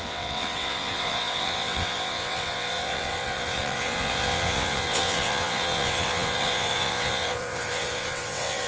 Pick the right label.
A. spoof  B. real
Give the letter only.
A